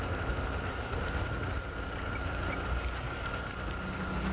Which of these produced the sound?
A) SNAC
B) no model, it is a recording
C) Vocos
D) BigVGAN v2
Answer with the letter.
B